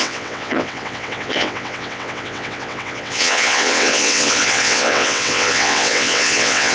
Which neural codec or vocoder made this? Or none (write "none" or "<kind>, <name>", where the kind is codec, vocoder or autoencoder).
vocoder, WaveNeXt